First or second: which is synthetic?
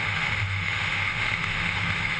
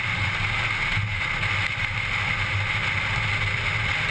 first